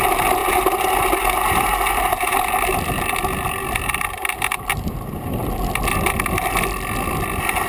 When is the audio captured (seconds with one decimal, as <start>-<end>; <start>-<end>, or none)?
0.0-0.4; 5.0-5.4; 6.4-7.7

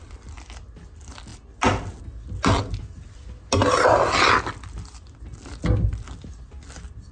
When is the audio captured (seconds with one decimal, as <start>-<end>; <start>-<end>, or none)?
0.0-7.1

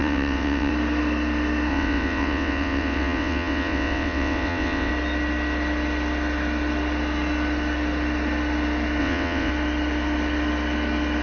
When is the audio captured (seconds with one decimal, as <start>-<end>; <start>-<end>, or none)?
0.7-1.7; 4.9-9.0; 9.5-11.2

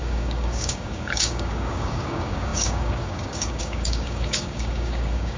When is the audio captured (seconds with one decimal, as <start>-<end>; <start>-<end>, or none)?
none

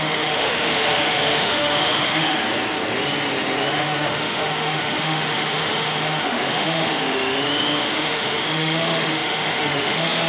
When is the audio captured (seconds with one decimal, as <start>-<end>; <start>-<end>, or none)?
2.4-3.7

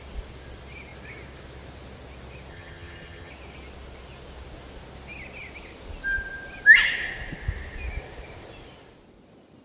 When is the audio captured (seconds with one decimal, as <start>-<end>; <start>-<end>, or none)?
0.0-2.5; 3.3-9.6